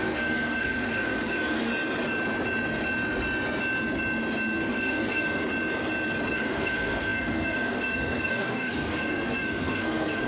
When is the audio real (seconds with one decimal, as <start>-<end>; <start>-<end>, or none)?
1.7-4.7; 5.4-6.3